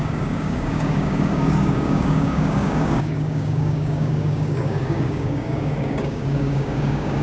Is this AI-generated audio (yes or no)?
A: yes